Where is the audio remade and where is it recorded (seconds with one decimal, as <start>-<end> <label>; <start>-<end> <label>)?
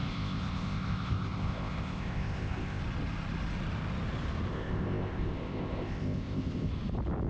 0.0-2.8 remade; 2.8-4.5 recorded; 4.5-6.7 remade; 6.7-7.3 recorded